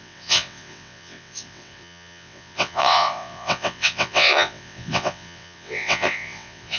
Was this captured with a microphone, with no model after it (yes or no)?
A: no